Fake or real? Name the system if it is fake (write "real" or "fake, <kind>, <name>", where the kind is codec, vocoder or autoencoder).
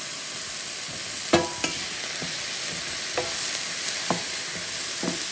real